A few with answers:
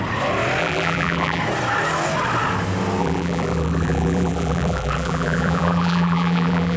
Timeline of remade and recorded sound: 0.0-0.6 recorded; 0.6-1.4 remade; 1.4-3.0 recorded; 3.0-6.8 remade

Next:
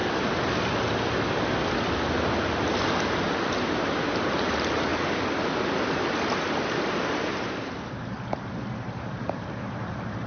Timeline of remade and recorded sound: 0.0-3.4 recorded; 3.4-4.9 remade; 4.9-7.2 recorded; 7.2-10.3 remade

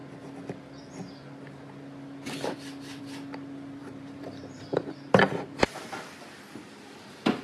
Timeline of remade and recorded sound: 0.0-3.8 recorded; 3.8-4.6 remade; 4.6-7.4 recorded

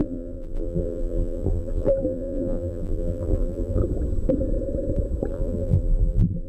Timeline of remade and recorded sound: 0.0-3.8 remade; 3.8-5.3 recorded; 5.3-6.5 remade

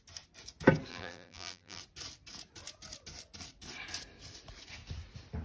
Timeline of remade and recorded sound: 0.0-0.9 recorded; 0.9-1.8 remade; 1.8-5.4 recorded